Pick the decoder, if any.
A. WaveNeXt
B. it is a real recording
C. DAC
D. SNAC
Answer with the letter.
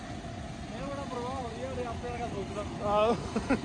B